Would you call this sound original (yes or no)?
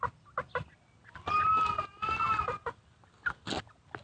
yes